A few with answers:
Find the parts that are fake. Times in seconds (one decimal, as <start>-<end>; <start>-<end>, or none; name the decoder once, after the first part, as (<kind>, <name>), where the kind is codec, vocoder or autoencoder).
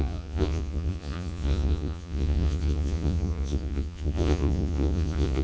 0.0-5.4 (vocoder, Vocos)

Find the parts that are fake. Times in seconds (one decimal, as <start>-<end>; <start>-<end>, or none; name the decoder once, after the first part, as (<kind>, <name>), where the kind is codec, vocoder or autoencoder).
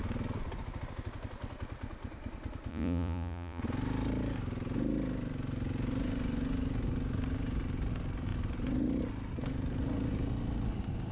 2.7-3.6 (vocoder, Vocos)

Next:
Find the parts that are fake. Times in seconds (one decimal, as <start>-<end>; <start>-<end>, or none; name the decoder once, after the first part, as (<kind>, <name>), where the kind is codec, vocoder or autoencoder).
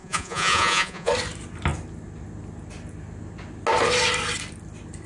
0.0-1.1 (vocoder, Vocos)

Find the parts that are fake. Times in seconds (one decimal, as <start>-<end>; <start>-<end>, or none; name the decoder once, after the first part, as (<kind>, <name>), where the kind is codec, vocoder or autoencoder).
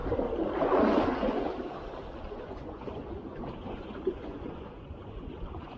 0.6-1.5 (vocoder, Vocos); 2.3-5.8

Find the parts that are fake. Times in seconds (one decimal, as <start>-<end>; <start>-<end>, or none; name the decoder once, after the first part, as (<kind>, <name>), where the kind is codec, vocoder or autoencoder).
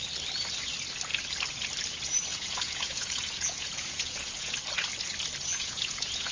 2.3-4.5 (vocoder, Vocos); 5.5-6.3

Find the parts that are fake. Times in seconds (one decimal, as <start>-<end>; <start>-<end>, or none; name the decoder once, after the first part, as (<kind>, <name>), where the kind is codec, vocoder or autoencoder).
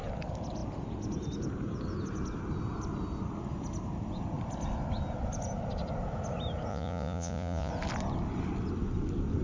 6.7-7.7 (vocoder, Vocos)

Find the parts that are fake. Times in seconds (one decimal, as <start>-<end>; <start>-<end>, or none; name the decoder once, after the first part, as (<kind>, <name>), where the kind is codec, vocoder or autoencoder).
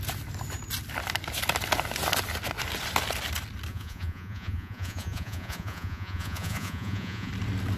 3.7-7.3 (vocoder, Vocos)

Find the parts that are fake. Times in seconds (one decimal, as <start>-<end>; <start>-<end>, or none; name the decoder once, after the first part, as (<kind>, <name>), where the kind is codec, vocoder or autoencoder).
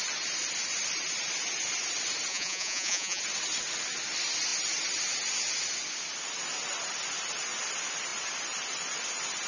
2.3-3.2 (vocoder, Vocos)